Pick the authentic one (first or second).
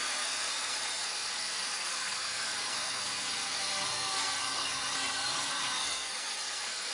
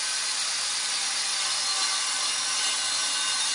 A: second